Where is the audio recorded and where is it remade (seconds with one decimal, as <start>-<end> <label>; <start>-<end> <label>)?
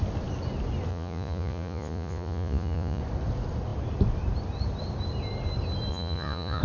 0.0-0.9 recorded; 0.9-3.0 remade; 3.0-5.9 recorded; 5.9-6.6 remade